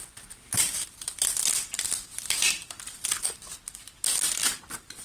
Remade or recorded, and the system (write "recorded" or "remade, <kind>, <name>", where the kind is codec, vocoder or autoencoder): recorded